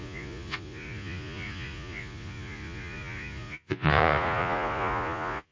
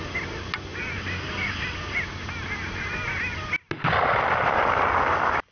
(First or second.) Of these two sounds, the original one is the second